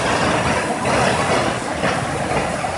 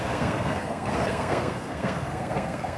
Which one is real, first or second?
first